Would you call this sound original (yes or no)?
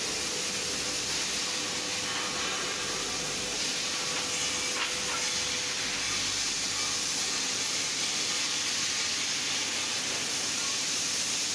yes